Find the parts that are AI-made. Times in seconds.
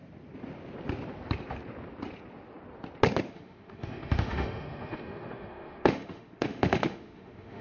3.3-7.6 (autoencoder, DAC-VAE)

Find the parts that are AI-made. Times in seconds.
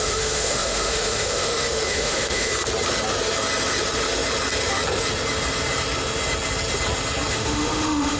0.0-2.5 (autoencoder, DAC-VAE); 7.3-8.2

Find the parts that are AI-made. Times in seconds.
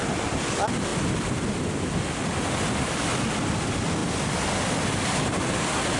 none